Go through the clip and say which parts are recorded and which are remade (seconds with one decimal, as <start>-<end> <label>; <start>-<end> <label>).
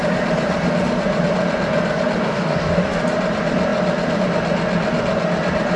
0.0-2.2 recorded; 2.2-3.0 remade; 3.0-5.8 recorded